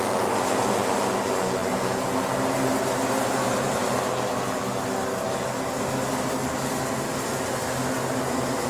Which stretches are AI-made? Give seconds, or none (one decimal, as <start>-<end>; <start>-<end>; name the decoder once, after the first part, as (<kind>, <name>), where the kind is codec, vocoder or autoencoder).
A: none